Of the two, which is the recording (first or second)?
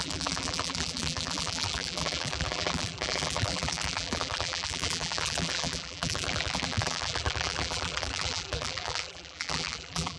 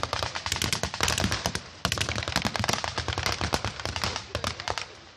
second